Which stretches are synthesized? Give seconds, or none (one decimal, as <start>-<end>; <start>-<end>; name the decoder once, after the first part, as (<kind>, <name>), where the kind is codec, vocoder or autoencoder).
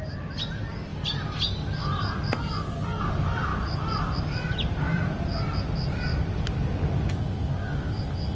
none